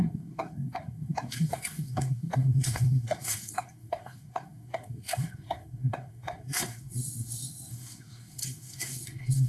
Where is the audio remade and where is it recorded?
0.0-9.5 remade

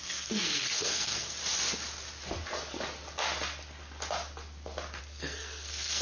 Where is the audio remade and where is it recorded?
0.0-1.4 remade; 1.4-5.0 recorded; 5.0-6.0 remade

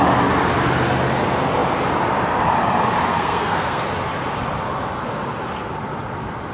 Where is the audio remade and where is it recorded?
0.0-3.1 recorded; 3.1-3.8 remade; 3.8-6.5 recorded

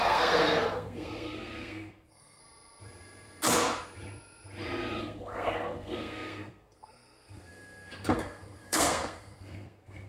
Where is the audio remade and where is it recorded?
0.0-2.4 remade; 2.4-5.0 recorded; 5.0-10.1 remade

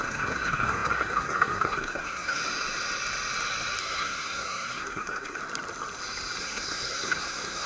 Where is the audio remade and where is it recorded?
0.0-2.4 remade; 2.4-3.8 recorded; 3.8-5.4 remade; 5.4-6.4 recorded; 6.4-7.7 remade

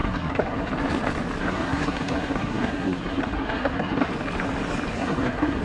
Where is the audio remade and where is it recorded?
0.0-0.7 remade; 0.7-1.4 recorded; 1.4-4.1 remade; 4.1-4.9 recorded; 4.9-5.6 remade

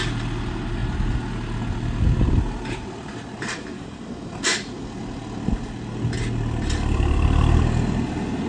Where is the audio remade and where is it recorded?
0.0-8.5 recorded

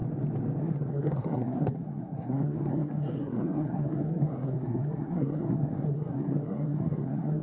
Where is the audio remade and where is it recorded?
0.0-0.6 recorded; 0.6-7.4 remade